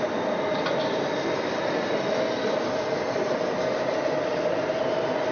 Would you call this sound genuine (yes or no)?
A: yes